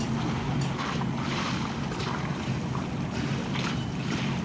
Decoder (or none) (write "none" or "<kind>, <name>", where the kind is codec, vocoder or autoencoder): vocoder, BigVGAN v2